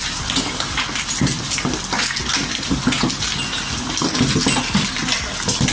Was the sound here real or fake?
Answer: real